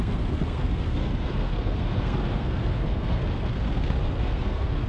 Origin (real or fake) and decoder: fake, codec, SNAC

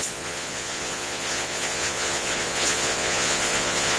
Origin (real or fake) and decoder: fake, vocoder, Vocos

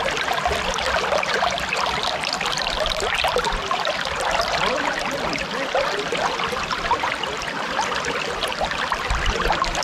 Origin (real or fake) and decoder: fake, vocoder, BigVGAN v2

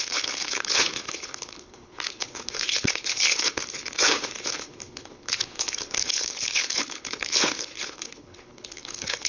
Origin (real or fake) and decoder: fake, codec, HILCodec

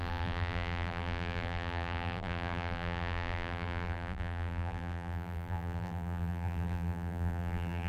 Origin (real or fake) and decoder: fake, vocoder, BigVGAN v2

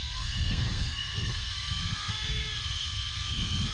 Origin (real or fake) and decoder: fake, codec, SNAC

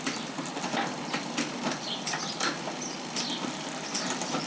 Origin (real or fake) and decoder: real